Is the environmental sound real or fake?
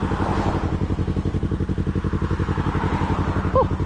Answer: real